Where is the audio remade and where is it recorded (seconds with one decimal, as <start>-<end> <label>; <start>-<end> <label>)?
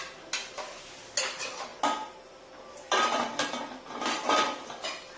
0.0-5.2 recorded